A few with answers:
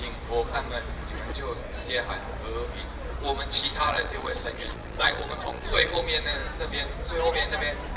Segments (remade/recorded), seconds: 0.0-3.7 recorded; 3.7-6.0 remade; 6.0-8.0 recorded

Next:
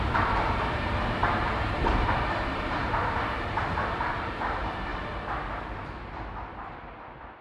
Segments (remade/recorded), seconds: 0.0-4.9 remade; 4.9-7.4 recorded

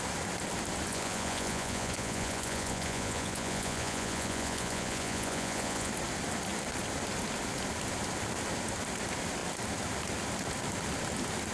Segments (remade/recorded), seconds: 0.0-0.9 recorded; 0.9-5.9 remade; 5.9-11.5 recorded

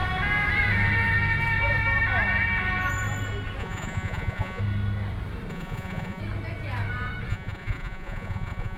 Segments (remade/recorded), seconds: 0.0-3.6 recorded; 3.6-4.6 remade; 4.6-5.5 recorded; 5.5-6.2 remade; 6.2-7.3 recorded; 7.3-8.8 remade

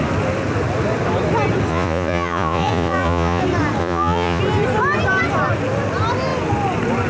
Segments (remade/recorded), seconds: 0.0-1.7 recorded; 1.7-3.4 remade; 3.4-3.8 recorded; 3.8-4.4 remade; 4.4-7.1 recorded

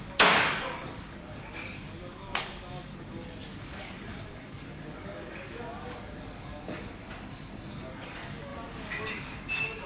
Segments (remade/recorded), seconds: 0.0-7.0 remade; 7.0-7.7 recorded; 7.7-9.9 remade